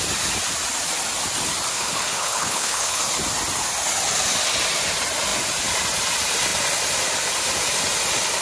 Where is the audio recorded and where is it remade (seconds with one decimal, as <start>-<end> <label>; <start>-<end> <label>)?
0.0-1.7 recorded; 1.7-3.0 remade; 3.0-8.4 recorded